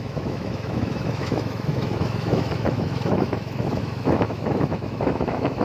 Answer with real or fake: fake